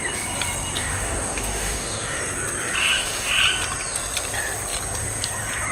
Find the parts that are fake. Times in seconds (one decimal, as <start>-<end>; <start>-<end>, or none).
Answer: 0.8-2.2; 2.8-3.3